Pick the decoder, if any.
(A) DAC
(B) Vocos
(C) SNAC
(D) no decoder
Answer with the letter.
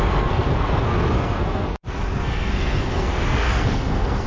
C